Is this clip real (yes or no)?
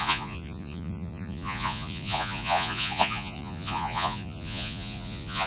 no